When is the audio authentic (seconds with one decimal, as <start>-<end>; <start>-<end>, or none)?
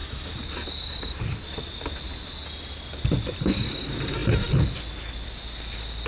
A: 1.6-6.1